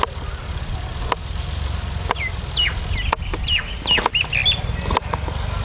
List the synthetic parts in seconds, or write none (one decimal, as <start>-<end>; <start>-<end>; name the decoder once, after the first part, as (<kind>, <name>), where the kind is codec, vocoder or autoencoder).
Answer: none